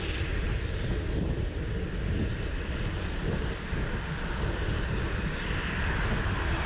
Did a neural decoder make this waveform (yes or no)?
no